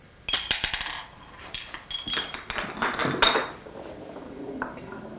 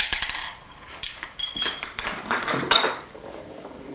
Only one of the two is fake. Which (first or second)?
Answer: second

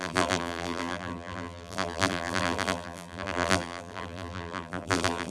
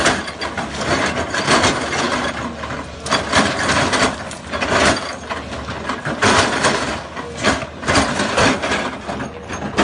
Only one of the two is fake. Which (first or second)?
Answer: first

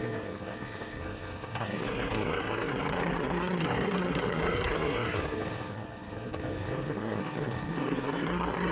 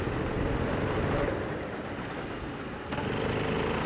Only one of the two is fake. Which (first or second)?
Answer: first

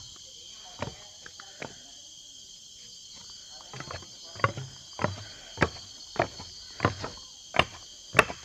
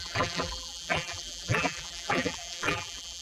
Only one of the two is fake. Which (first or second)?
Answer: second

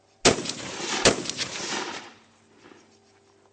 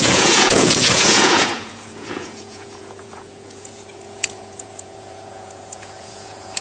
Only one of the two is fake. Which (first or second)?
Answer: second